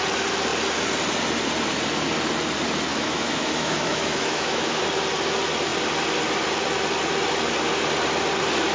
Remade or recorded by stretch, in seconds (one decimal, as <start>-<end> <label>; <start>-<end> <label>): 0.0-2.9 recorded; 2.9-4.8 remade; 4.8-8.7 recorded